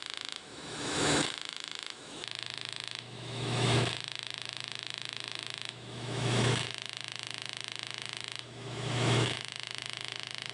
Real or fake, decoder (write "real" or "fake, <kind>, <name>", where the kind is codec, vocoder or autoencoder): fake, autoencoder, DAC-VAE